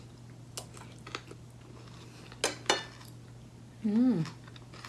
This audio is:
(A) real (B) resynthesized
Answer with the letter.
A